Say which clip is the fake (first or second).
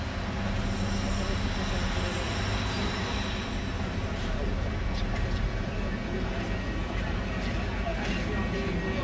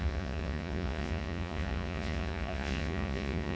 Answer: second